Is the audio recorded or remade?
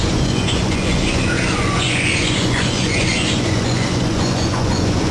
remade